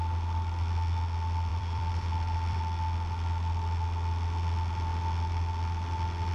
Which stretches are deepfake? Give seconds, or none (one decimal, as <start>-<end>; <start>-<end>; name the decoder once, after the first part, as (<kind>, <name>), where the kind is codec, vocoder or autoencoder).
1.5-2.6 (vocoder, BigVGAN v2)